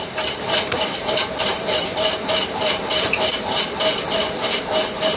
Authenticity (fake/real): fake